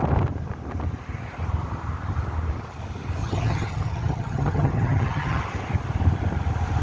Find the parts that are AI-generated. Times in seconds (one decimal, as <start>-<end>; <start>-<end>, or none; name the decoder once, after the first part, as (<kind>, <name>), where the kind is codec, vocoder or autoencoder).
3.2-5.4 (vocoder, HiFi-GAN)